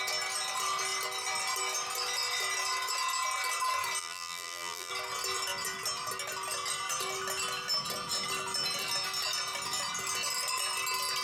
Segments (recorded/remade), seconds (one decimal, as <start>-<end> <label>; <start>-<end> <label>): 0.0-4.0 recorded; 4.0-4.9 remade; 4.9-11.2 recorded

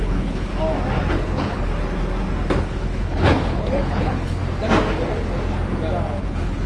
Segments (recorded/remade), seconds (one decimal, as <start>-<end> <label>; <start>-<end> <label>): 0.0-0.5 remade; 0.5-1.1 recorded; 1.1-1.7 remade; 1.7-2.6 recorded; 2.6-4.4 remade; 4.4-6.2 recorded; 6.2-6.7 remade

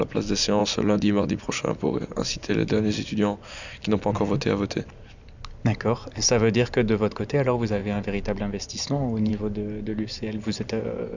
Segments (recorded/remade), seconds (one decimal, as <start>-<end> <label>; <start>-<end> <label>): 0.0-0.6 recorded; 0.6-2.5 remade; 2.5-11.2 recorded

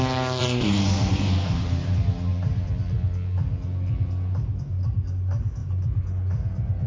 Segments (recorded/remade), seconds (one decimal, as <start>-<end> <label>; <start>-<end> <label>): 0.0-0.4 recorded; 0.4-2.7 remade; 2.7-6.9 recorded